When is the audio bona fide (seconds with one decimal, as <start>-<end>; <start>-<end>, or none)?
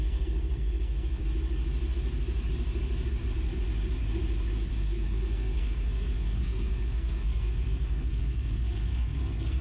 1.2-4.7